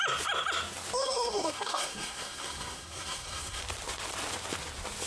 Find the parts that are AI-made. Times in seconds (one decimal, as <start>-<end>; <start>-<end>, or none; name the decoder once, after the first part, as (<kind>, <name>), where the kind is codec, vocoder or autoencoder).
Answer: 1.0-3.6 (codec, SNAC)

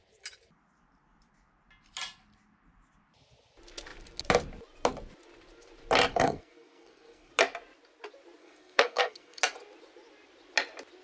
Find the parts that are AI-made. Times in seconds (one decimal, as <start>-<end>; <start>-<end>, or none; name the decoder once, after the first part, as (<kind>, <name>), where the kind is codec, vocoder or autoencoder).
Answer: 6.1-7.3 (codec, SNAC); 8.4-9.4